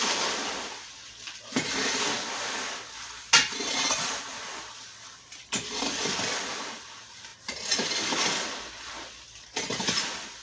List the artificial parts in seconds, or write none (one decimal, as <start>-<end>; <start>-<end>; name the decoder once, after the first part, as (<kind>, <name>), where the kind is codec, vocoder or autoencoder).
none